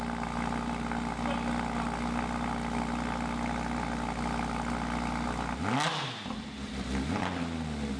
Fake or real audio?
real